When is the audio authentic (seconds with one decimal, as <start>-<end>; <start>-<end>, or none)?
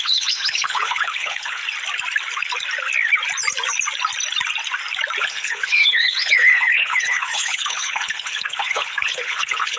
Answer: 1.6-5.2